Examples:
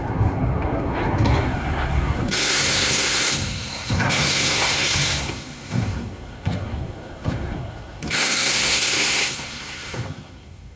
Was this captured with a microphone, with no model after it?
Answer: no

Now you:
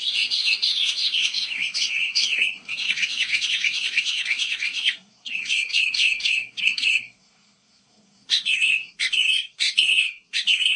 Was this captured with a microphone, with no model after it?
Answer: no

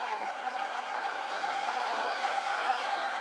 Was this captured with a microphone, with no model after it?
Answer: no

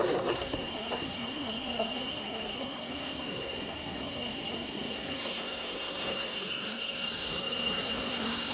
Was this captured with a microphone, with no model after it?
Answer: no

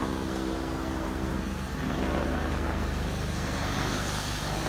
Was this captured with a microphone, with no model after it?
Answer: no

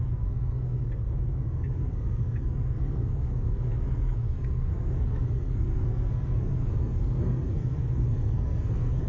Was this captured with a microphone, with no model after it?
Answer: no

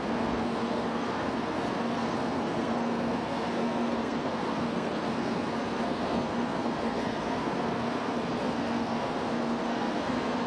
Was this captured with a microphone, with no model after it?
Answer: no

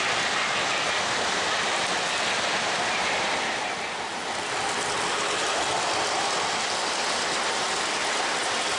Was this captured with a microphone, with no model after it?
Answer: yes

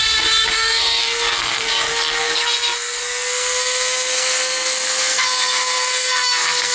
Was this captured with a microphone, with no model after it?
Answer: no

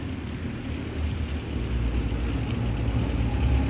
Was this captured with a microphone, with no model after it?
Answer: yes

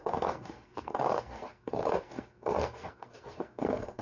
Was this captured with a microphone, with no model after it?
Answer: no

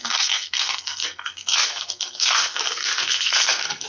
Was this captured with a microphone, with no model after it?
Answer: no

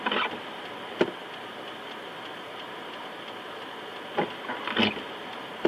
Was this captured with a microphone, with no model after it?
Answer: yes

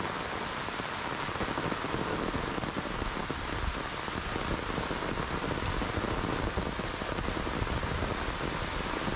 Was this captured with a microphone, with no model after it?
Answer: yes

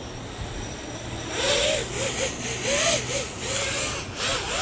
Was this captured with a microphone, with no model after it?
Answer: yes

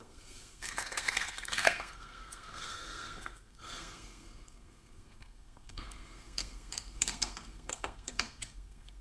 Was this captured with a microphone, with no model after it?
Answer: no